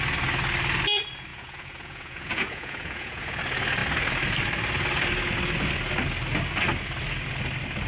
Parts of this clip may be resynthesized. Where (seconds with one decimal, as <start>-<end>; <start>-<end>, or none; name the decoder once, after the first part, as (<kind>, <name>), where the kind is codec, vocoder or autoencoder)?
1.3-3.4 (vocoder, Vocos)